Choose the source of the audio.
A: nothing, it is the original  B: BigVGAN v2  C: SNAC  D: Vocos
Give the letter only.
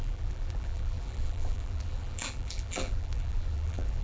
B